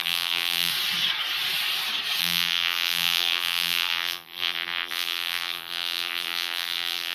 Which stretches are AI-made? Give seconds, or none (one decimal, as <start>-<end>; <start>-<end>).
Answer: 0.0-0.7; 2.2-7.1